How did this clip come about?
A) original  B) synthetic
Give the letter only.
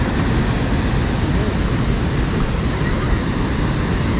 A